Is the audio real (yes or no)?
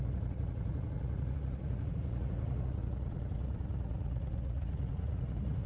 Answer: no